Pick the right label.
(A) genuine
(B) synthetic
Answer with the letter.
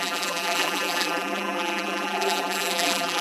B